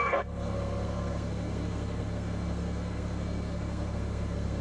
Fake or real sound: fake